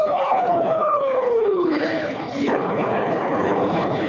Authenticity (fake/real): fake